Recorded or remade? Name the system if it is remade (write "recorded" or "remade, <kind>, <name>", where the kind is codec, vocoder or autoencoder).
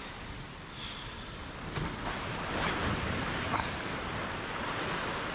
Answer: recorded